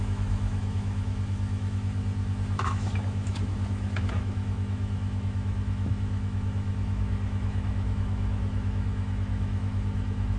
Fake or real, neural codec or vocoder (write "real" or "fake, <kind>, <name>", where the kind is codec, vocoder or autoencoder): fake, autoencoder, DAC-VAE